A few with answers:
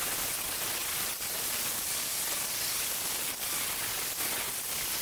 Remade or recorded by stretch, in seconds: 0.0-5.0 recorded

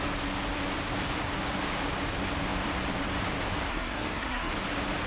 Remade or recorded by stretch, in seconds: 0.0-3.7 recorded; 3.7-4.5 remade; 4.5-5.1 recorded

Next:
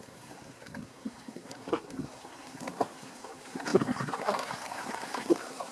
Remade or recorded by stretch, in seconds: 0.0-5.7 remade